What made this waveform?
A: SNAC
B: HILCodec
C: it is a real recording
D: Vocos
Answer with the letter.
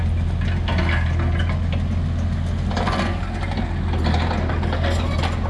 C